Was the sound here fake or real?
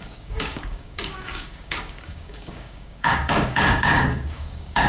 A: fake